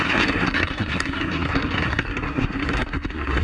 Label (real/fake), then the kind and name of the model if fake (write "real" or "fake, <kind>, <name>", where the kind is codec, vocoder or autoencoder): fake, codec, SNAC